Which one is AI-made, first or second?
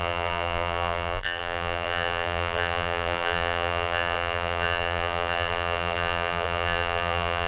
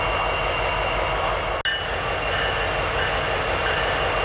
first